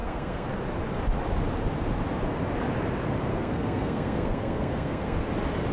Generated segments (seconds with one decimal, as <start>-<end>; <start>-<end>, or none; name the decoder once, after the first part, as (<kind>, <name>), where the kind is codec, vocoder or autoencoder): 0.0-0.5 (codec, SNAC); 3.3-5.3